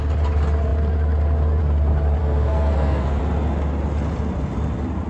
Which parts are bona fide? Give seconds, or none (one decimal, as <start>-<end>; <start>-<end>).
0.0-2.2; 3.2-5.1